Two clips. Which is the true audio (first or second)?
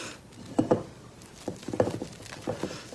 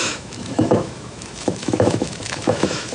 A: first